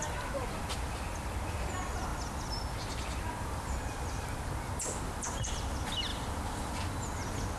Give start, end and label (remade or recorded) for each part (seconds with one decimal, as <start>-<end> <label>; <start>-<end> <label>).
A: 0.0-6.1 recorded; 6.1-6.8 remade; 6.8-7.6 recorded